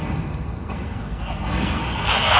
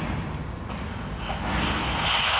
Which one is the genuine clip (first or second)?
second